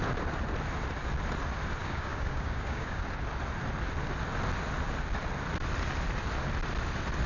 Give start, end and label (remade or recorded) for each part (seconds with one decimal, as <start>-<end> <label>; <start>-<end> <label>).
0.0-1.8 recorded; 1.8-3.0 remade; 3.0-7.3 recorded

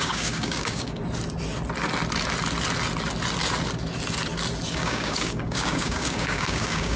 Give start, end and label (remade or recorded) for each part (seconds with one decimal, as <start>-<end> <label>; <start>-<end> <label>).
0.0-1.0 remade; 1.0-4.7 recorded; 4.7-7.0 remade